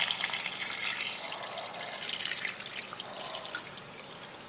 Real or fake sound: real